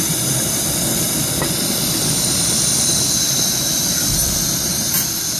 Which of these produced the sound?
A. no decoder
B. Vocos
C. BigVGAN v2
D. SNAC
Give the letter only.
A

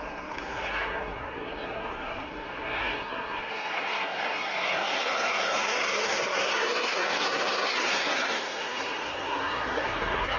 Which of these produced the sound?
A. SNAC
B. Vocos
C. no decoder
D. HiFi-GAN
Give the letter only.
A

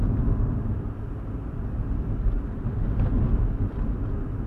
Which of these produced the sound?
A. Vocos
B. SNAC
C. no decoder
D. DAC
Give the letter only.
C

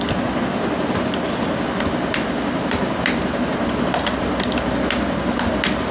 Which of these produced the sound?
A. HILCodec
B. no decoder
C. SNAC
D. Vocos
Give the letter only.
B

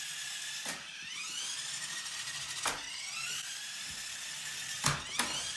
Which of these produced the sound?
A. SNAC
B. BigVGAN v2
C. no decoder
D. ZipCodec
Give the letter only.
C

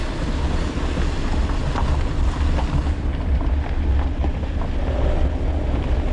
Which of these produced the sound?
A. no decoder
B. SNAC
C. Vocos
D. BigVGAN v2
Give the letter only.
A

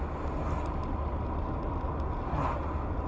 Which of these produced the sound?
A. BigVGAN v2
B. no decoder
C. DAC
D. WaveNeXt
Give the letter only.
B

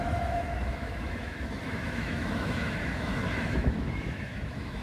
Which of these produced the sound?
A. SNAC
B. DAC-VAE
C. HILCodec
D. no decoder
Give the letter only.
B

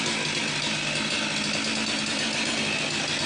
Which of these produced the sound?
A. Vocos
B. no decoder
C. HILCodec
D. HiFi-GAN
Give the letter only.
B